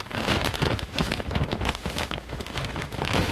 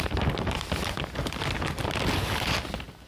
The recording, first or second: second